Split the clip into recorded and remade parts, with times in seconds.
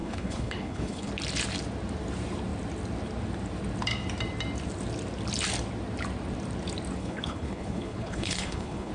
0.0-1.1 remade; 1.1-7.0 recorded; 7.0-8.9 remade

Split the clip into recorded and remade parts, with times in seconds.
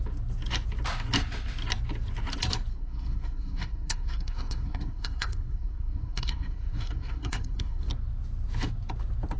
0.0-2.7 recorded; 2.7-7.9 remade; 7.9-9.4 recorded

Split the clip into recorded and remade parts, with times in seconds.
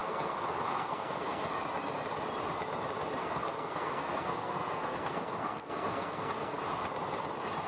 0.0-1.5 remade; 1.5-3.2 recorded; 3.2-6.6 remade; 6.6-7.7 recorded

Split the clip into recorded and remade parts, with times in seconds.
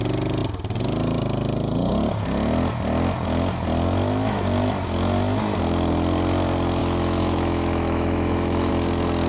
0.0-6.8 recorded; 6.8-8.7 remade; 8.7-9.3 recorded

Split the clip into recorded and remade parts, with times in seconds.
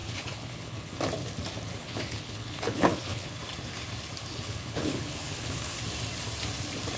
0.0-1.0 remade; 1.0-1.8 recorded; 1.8-3.4 remade; 3.4-4.3 recorded; 4.3-5.8 remade; 5.8-7.0 recorded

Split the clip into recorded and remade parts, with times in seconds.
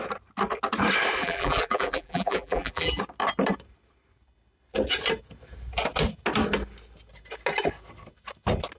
0.0-1.2 recorded; 1.2-3.0 remade; 3.0-8.8 recorded